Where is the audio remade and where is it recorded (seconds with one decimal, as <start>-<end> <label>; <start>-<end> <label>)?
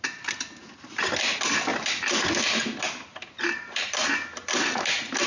0.0-1.7 recorded; 1.7-5.3 remade